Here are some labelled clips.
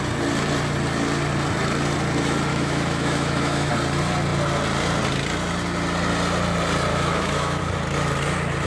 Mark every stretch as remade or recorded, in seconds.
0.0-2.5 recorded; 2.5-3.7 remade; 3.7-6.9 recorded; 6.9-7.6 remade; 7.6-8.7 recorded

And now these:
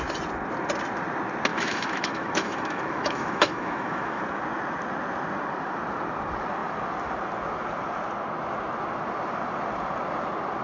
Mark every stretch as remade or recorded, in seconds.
0.0-1.5 recorded; 1.5-4.2 remade; 4.2-10.6 recorded

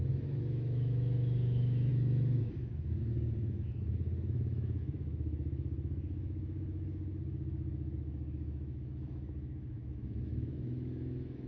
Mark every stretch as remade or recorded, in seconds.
0.0-11.5 remade

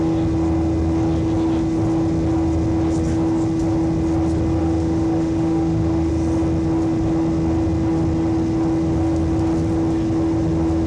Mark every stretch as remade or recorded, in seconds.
0.0-4.6 recorded; 4.6-6.1 remade; 6.1-10.9 recorded